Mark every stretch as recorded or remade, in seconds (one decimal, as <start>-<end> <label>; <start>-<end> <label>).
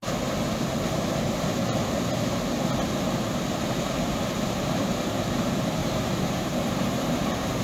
0.0-4.1 recorded; 4.1-5.0 remade; 5.0-5.8 recorded; 5.8-7.6 remade